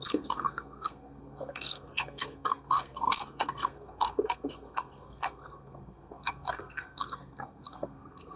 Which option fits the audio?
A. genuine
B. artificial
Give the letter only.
B